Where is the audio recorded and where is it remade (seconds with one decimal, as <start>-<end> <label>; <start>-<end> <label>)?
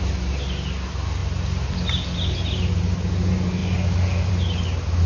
0.0-5.1 recorded